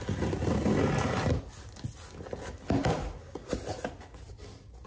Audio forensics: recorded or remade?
recorded